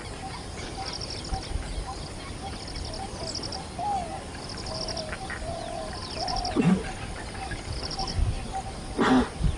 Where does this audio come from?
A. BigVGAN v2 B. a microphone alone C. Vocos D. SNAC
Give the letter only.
A